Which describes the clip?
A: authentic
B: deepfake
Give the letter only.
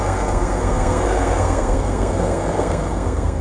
B